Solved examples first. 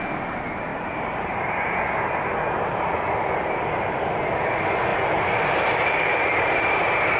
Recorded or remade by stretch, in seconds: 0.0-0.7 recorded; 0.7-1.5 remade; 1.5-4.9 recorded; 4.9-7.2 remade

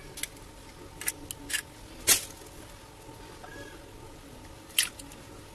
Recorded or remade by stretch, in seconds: 0.0-5.5 recorded

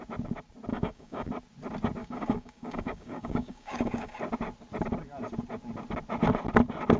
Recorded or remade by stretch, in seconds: 0.0-0.7 recorded; 0.7-1.3 remade; 1.3-2.0 recorded; 2.0-4.2 remade; 4.2-7.0 recorded